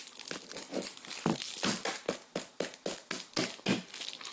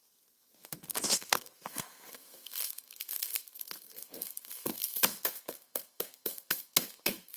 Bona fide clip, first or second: first